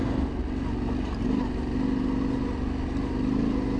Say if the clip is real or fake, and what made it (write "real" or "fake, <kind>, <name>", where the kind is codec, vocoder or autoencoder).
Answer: real